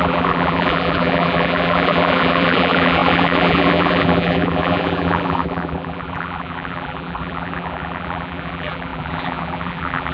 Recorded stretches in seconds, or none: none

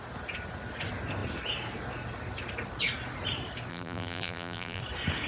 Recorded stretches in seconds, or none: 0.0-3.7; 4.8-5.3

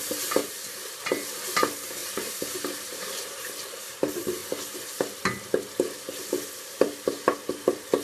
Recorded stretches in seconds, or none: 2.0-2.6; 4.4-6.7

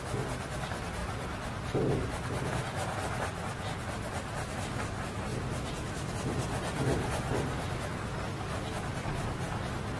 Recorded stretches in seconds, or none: 0.0-1.0; 2.5-10.0

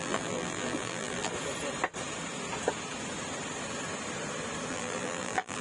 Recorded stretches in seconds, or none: 1.3-4.7

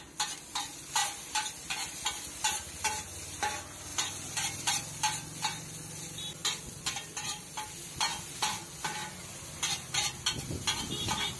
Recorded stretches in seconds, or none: 0.0-3.9; 4.7-11.4

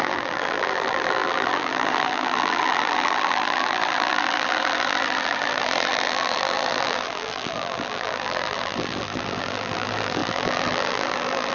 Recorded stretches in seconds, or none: none

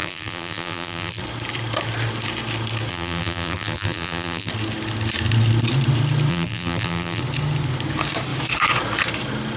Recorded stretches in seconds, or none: 1.2-2.9; 4.5-6.3; 7.2-9.6